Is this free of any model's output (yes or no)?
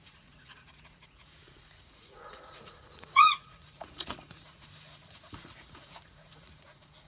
no